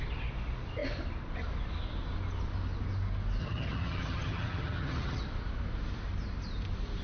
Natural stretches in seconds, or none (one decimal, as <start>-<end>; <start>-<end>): 0.0-3.4; 5.2-7.0